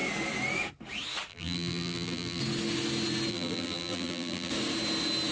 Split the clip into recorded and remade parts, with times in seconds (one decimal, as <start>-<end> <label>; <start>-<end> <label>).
0.0-1.3 recorded; 1.3-2.4 remade; 2.4-3.3 recorded; 3.3-4.5 remade; 4.5-5.3 recorded